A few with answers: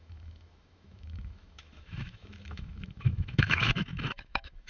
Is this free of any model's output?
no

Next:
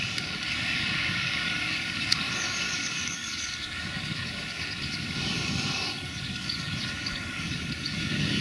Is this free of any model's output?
no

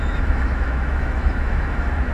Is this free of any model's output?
no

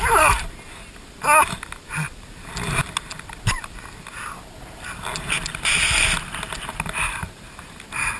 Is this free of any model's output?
yes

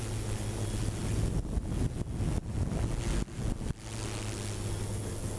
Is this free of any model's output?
yes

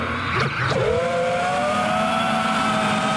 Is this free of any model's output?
yes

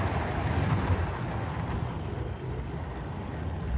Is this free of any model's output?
yes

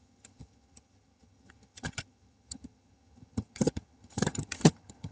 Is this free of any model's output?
no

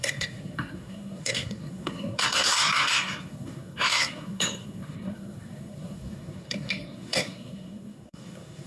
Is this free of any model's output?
no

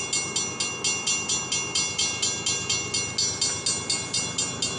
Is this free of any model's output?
yes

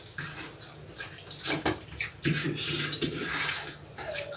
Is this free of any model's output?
yes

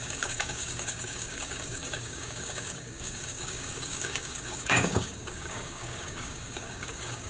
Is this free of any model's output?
no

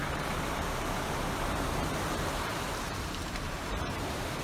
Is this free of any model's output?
no